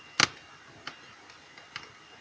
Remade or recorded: recorded